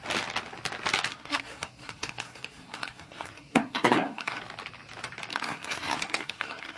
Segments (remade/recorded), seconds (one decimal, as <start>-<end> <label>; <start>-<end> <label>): 0.0-1.1 recorded; 1.1-4.4 remade; 4.4-5.3 recorded; 5.3-6.8 remade